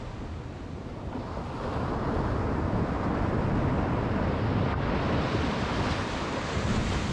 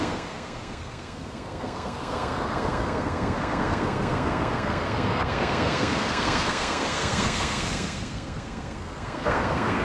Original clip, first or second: first